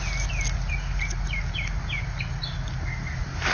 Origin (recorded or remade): recorded